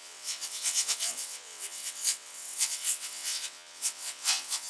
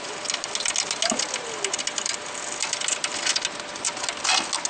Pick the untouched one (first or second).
second